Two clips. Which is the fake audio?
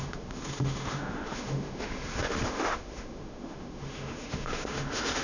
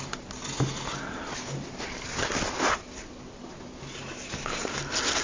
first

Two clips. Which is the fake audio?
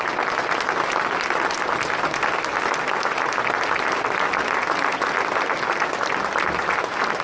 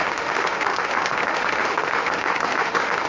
second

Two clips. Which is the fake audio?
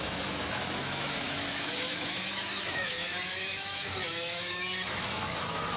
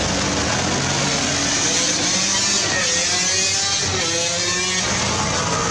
first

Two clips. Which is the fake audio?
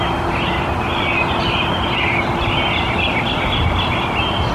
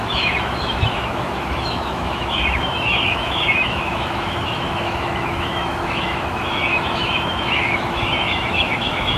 second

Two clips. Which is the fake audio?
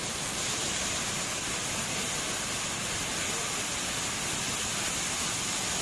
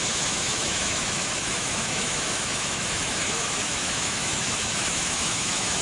second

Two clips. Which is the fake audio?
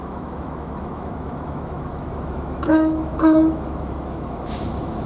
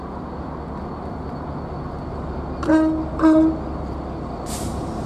first